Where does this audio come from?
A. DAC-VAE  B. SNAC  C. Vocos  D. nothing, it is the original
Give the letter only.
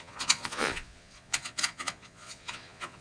C